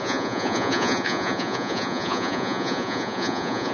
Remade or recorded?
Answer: remade